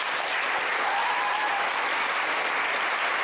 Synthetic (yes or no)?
no